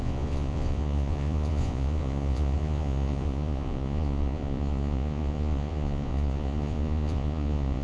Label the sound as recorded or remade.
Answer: remade